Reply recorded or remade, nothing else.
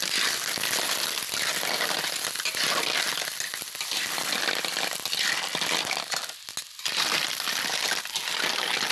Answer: recorded